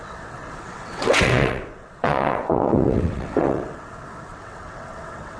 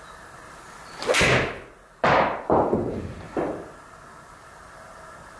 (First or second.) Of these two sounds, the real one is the second